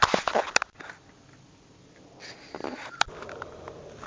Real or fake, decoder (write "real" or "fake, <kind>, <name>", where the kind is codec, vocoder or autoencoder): real